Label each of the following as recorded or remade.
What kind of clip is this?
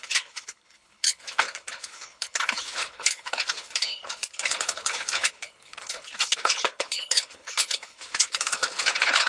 remade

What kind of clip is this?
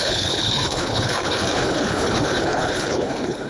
remade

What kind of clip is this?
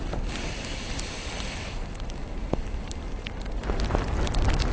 recorded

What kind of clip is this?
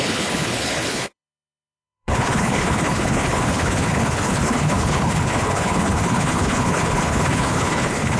remade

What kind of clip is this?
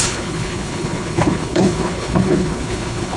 remade